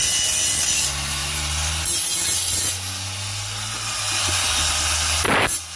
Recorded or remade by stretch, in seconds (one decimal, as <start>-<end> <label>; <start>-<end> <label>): 0.0-5.8 recorded